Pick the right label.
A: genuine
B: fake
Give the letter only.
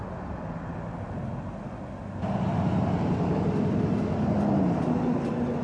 A